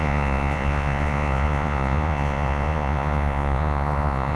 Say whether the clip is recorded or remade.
remade